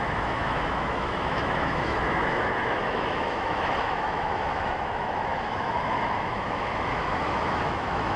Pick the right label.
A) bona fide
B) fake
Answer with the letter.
B